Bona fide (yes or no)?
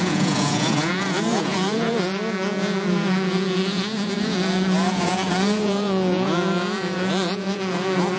no